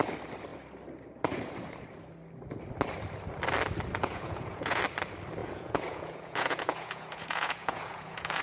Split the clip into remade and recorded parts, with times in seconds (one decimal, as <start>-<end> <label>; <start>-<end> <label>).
0.0-4.0 recorded; 4.0-4.8 remade; 4.8-5.4 recorded; 5.4-8.4 remade